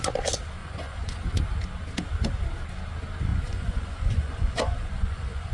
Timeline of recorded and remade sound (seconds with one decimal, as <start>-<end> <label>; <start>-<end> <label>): 0.0-0.6 recorded; 0.6-1.2 remade; 1.2-3.3 recorded; 3.3-5.5 remade